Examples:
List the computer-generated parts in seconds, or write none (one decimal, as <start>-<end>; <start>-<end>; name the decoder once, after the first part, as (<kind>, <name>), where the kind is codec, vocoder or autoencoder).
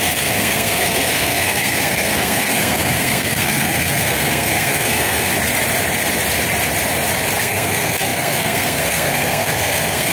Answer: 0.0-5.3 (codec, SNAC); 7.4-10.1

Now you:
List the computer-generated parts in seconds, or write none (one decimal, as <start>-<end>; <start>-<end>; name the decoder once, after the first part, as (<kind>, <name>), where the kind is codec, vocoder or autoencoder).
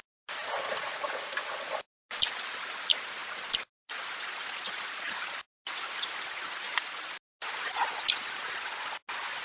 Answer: none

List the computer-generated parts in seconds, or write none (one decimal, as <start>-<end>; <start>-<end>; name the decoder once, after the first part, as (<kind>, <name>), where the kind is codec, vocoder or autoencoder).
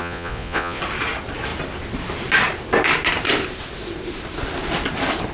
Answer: 0.0-0.8 (vocoder, Vocos)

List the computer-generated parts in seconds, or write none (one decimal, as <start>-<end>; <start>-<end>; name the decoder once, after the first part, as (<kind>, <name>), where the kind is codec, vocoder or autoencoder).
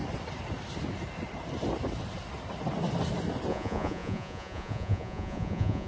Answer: 3.5-5.9 (vocoder, Vocos)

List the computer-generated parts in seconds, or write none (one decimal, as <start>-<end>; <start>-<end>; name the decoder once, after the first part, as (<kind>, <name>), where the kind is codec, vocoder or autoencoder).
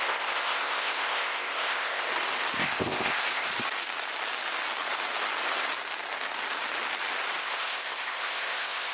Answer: 0.0-2.1 (codec, ZipCodec); 2.6-3.5; 7.4-8.9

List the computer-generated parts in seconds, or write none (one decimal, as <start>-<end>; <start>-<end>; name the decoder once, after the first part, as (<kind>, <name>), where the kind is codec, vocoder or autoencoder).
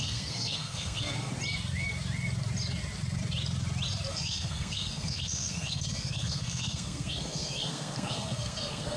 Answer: 0.0-1.3 (codec, SNAC); 4.1-9.0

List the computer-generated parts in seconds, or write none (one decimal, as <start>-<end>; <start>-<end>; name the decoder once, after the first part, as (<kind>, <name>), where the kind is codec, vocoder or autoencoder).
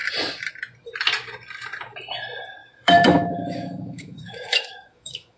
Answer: 2.6-5.4 (autoencoder, DAC-VAE)